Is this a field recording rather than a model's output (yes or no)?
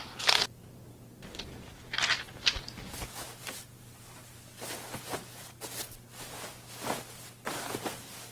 yes